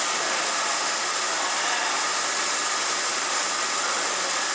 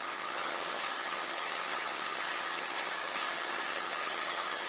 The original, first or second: first